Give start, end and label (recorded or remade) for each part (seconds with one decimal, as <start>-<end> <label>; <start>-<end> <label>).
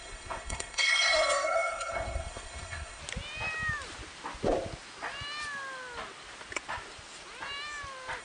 0.0-3.0 remade; 3.0-8.2 recorded